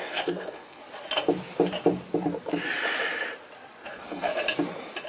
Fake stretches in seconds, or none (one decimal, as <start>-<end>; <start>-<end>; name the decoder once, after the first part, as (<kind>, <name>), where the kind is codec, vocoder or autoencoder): 0.0-0.8 (codec, SNAC); 3.9-4.3